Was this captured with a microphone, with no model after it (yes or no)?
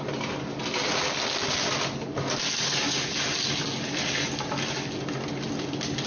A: yes